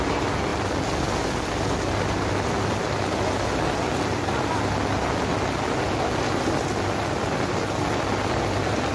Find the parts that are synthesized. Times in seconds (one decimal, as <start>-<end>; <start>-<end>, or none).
none